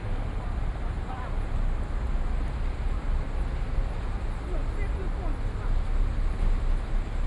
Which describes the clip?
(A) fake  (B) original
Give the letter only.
B